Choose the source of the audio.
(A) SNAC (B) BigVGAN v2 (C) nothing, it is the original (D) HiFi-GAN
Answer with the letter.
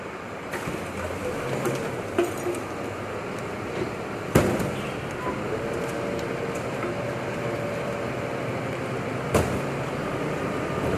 B